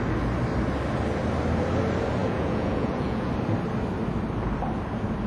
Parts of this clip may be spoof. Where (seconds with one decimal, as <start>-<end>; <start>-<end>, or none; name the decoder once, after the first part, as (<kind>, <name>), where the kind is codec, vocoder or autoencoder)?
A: 2.2-3.3 (vocoder, Vocos)